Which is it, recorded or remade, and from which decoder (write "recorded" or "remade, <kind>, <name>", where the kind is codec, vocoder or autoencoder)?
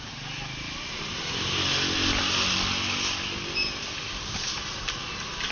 recorded